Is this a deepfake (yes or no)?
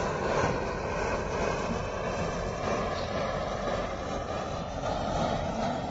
no